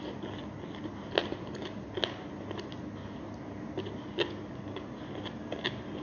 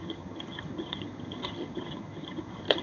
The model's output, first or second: second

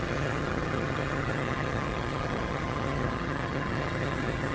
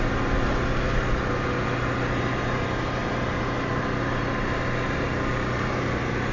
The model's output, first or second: first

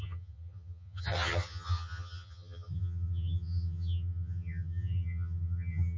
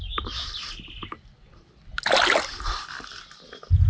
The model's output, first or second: first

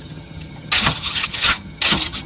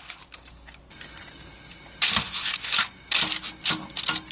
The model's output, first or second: first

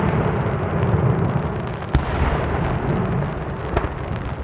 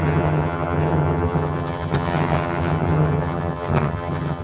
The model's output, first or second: second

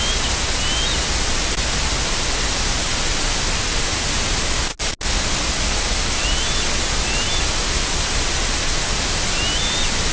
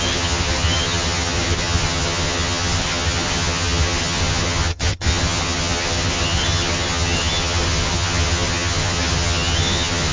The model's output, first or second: second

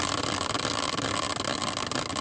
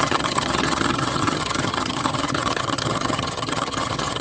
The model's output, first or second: second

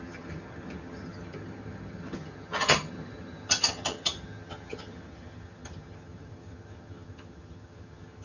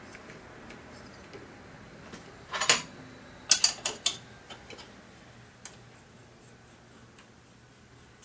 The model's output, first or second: first